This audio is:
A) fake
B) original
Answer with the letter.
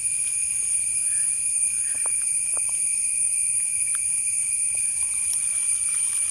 A